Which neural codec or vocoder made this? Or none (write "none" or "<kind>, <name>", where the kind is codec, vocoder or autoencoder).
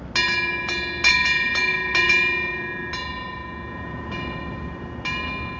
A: none